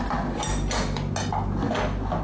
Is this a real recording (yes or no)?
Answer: yes